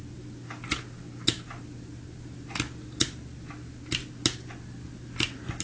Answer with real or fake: real